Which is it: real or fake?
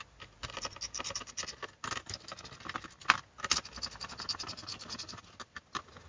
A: real